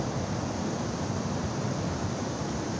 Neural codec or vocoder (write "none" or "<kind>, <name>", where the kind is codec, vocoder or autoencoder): none